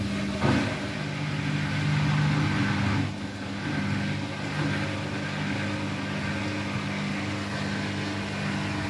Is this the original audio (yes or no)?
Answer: yes